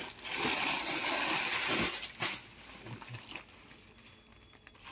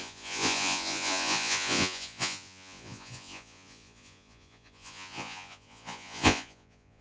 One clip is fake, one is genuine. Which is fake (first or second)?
second